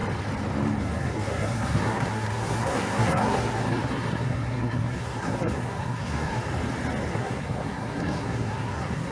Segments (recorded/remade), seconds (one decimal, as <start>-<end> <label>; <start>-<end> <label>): 0.0-0.8 recorded; 0.8-6.5 remade; 6.5-7.1 recorded; 7.1-9.1 remade